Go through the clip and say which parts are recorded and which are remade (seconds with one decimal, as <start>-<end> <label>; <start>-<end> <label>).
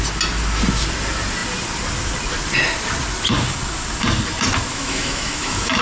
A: 0.0-4.7 recorded; 4.7-5.8 remade